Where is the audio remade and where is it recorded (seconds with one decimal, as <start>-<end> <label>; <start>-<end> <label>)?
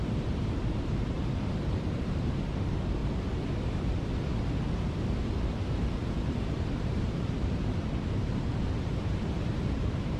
0.0-3.0 remade; 3.0-4.7 recorded; 4.7-10.2 remade